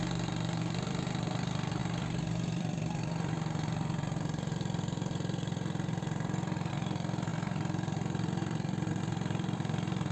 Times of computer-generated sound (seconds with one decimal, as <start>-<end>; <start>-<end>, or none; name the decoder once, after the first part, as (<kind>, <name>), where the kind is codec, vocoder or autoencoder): 0.0-10.1 (vocoder, BigVGAN v2)